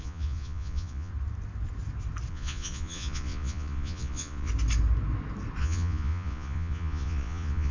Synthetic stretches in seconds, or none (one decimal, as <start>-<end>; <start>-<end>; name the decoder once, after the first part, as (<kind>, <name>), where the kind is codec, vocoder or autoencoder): 0.0-1.1 (vocoder, Vocos); 2.3-4.5; 5.6-7.7